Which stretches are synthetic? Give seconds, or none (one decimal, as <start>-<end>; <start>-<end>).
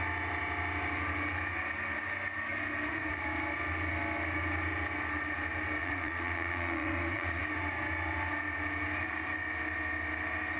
5.8-7.4